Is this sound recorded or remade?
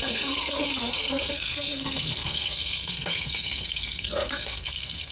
remade